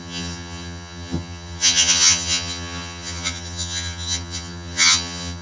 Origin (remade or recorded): remade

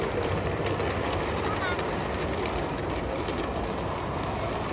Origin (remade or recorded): recorded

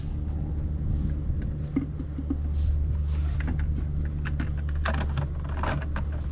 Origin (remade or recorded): recorded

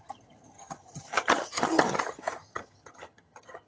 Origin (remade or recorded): remade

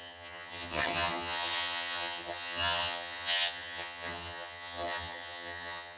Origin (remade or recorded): remade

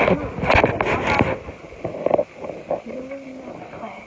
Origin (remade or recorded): recorded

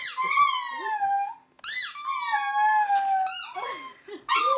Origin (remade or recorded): recorded